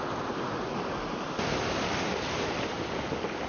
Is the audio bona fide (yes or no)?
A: yes